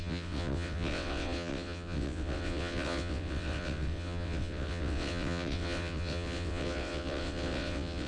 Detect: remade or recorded remade